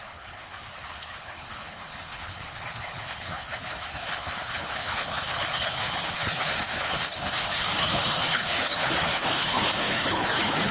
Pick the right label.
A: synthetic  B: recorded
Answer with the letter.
A